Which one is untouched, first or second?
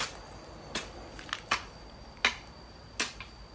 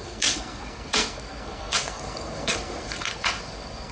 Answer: first